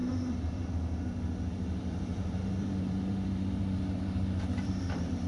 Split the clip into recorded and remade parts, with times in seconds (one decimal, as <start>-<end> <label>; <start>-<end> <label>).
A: 0.0-0.7 remade; 0.7-1.8 recorded; 1.8-5.3 remade